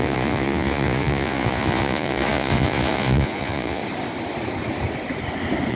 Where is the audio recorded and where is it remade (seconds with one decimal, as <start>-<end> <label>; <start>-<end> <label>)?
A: 0.0-3.8 remade; 3.8-5.7 recorded